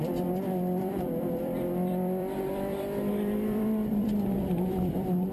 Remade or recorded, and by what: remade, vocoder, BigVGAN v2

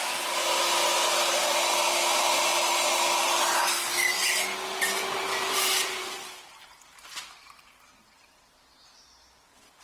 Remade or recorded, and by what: recorded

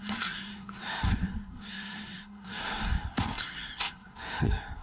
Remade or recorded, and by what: remade, codec, SNAC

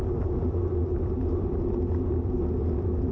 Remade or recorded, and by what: recorded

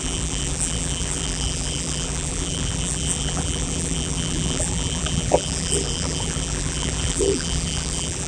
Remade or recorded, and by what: remade, vocoder, BigVGAN v2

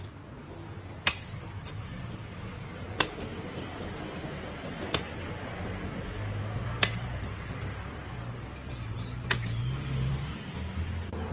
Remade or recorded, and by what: recorded